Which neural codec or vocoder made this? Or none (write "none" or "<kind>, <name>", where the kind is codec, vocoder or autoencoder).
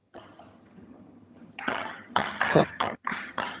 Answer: vocoder, HiFi-GAN